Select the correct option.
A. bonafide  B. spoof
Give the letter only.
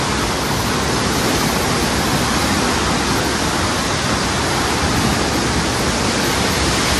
A